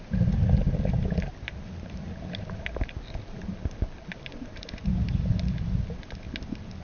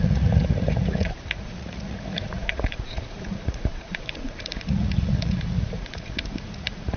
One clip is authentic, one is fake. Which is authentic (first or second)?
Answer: first